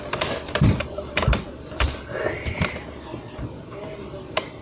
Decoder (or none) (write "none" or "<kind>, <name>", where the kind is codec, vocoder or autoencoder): none